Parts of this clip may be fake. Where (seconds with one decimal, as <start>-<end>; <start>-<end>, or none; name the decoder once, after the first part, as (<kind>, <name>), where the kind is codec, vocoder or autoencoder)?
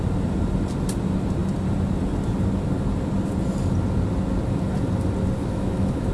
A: 5.4-6.1 (autoencoder, DAC-VAE)